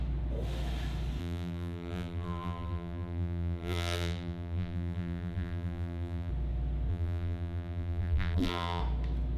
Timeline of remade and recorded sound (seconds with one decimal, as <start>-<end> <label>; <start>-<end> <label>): 0.0-1.2 recorded; 1.2-6.3 remade; 6.3-6.9 recorded; 6.9-8.8 remade; 8.8-9.4 recorded